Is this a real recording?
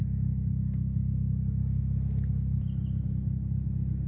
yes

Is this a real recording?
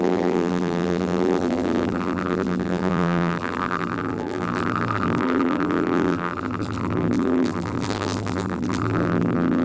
no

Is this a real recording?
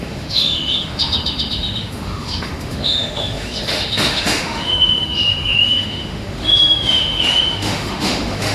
no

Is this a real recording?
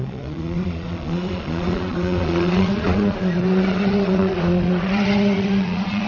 no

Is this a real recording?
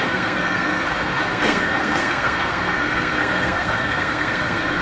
no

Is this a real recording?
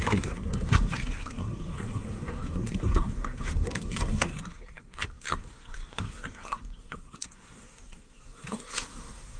no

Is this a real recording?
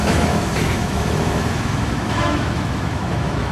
no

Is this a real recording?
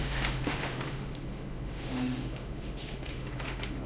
no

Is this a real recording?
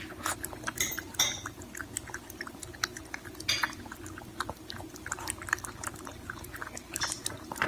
yes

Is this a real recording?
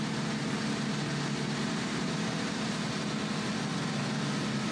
yes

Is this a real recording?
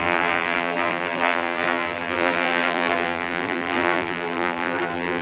no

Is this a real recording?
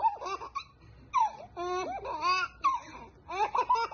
yes